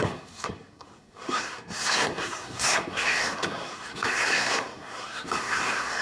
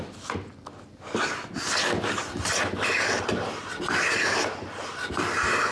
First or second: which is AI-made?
first